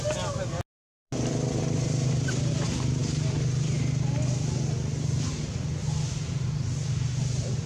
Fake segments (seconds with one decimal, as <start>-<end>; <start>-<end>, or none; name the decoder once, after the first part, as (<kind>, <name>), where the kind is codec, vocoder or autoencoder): 0.9-2.5 (vocoder, BigVGAN v2)